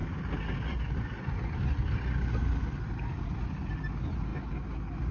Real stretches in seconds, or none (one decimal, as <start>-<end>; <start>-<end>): 0.0-5.1